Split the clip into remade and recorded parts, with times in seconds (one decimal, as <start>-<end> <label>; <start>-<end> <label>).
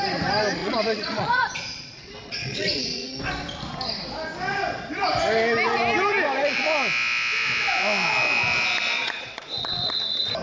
0.0-0.6 recorded; 0.6-3.2 remade; 3.2-9.0 recorded; 9.0-9.9 remade; 9.9-10.4 recorded